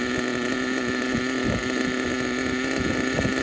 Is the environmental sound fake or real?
real